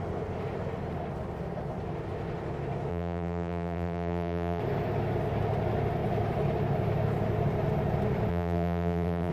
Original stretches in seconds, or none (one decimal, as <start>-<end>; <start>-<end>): 0.0-2.9; 4.6-8.3